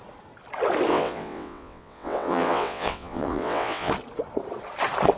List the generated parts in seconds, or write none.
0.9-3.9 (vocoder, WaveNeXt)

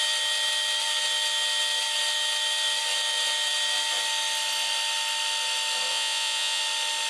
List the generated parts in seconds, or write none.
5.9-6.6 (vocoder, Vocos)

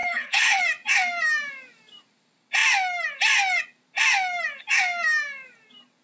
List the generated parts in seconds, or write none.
0.0-0.6 (codec, HILCodec)

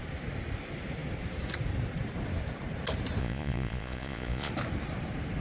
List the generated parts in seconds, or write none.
3.2-4.5 (vocoder, Vocos)

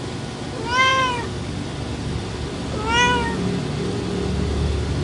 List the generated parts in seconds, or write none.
none

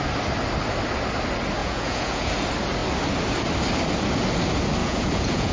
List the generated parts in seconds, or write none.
1.6-2.3 (vocoder, Vocos); 4.8-5.5

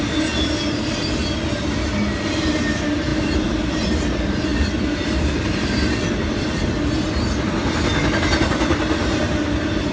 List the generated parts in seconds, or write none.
3.1-3.7 (vocoder, BigVGAN v2)